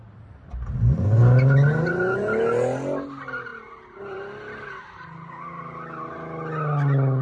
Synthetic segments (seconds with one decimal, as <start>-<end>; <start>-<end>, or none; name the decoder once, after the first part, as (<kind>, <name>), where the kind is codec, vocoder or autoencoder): none